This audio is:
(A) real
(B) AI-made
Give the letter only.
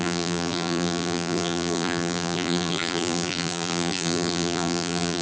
B